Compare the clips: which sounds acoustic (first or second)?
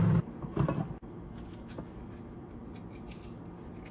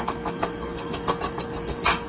first